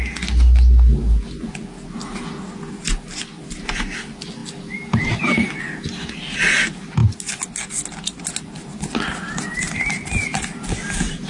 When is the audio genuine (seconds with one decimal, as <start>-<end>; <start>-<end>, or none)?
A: 0.0-4.4; 5.6-11.3